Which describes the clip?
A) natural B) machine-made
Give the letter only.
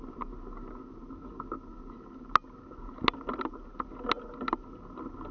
A